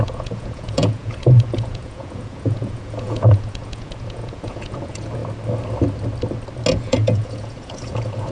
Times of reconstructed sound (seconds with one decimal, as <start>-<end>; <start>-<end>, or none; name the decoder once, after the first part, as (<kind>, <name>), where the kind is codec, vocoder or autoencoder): 0.0-5.2 (vocoder, Vocos); 6.7-8.3